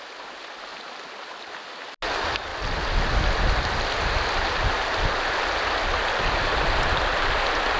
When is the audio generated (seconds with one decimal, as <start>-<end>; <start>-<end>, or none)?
none